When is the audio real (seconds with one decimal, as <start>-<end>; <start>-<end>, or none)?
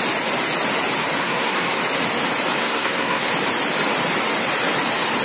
0.0-1.2; 1.8-2.6; 3.3-5.2